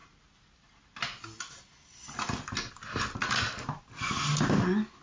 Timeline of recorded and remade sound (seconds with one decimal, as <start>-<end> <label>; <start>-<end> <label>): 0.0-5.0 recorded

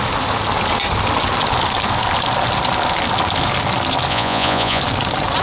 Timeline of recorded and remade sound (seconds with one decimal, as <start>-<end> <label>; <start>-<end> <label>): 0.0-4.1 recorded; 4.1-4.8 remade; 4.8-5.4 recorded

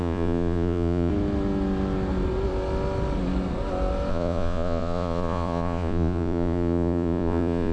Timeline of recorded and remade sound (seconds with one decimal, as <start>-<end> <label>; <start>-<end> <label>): 0.0-1.1 remade; 1.1-4.1 recorded; 4.1-7.7 remade